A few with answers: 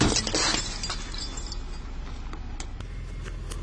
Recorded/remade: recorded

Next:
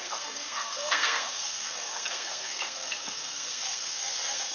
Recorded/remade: remade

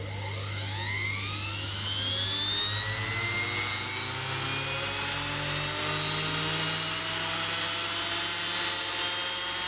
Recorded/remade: recorded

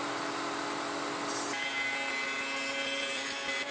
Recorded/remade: recorded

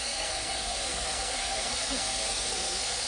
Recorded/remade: remade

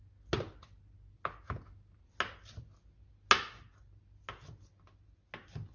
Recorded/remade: recorded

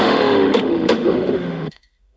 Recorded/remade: remade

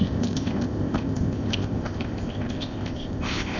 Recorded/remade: remade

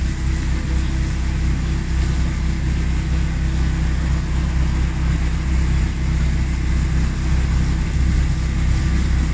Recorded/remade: recorded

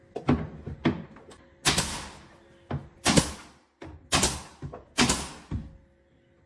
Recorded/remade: recorded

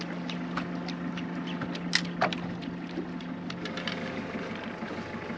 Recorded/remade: recorded